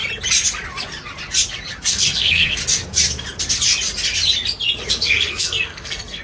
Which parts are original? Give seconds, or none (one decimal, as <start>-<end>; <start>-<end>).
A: 0.0-1.9; 2.6-4.9